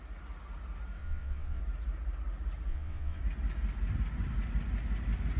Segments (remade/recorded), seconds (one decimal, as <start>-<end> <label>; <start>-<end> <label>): 0.0-1.0 recorded; 1.0-1.6 remade; 1.6-2.7 recorded; 2.7-3.2 remade; 3.2-5.4 recorded